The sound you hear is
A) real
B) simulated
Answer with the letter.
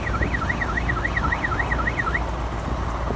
A